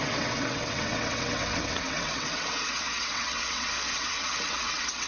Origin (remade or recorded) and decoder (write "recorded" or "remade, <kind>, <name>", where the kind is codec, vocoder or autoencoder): remade, vocoder, WaveNeXt